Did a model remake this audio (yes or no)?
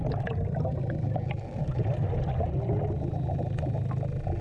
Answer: no